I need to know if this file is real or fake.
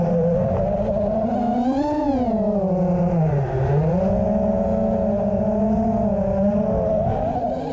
real